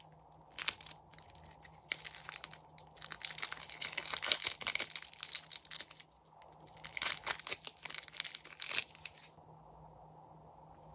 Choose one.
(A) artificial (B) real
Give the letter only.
B